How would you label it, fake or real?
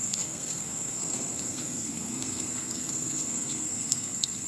fake